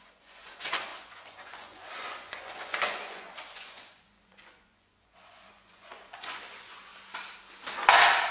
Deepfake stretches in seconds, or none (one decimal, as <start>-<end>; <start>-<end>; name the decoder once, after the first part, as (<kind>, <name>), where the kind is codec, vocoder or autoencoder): 0.0-6.9 (vocoder, Vocos)